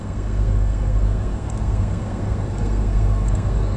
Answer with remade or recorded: remade